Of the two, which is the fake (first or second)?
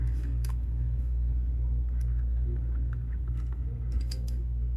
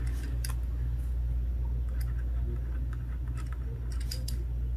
first